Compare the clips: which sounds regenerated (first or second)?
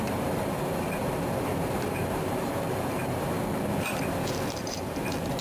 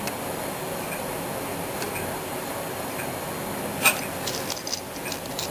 first